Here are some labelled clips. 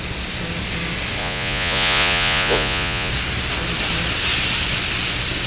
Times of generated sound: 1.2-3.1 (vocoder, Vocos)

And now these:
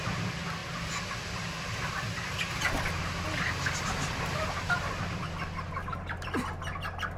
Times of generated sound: none

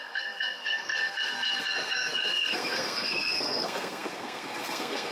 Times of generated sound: 0.0-5.1 (codec, SNAC)